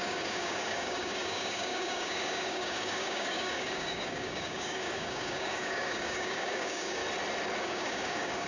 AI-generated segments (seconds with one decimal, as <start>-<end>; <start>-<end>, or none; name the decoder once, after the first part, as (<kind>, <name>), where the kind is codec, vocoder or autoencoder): 0.0-7.0 (codec, DAC); 7.6-8.5